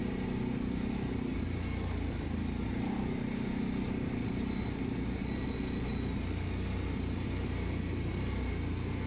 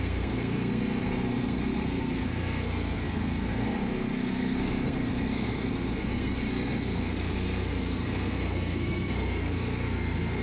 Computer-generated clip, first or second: second